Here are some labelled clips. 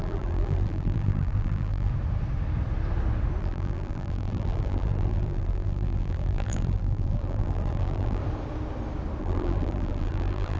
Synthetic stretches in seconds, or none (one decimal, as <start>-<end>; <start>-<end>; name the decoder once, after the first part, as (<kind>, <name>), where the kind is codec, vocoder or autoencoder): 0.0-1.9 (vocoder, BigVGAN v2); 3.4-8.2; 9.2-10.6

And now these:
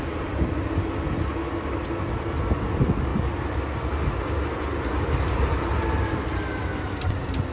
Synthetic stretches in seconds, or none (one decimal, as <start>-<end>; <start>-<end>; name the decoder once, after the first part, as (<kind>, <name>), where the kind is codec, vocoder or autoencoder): none

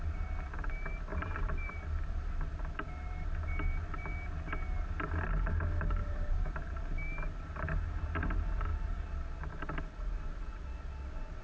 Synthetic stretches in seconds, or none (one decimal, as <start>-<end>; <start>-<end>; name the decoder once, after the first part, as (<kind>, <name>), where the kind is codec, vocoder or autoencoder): 1.1-1.7 (vocoder, BigVGAN v2); 6.0-6.8

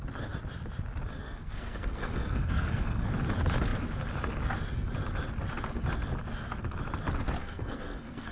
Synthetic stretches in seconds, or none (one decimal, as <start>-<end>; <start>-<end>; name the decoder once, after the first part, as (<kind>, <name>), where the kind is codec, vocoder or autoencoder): 1.2-3.1 (codec, SNAC); 7.4-8.3

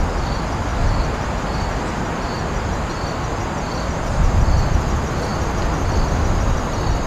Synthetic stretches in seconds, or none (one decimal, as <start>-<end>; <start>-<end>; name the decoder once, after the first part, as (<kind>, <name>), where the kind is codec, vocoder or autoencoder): none

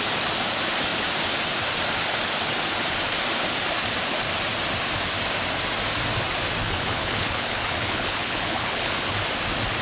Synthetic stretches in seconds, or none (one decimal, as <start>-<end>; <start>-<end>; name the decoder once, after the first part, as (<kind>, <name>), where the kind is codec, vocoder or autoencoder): 6.6-8.9 (codec, HILCodec)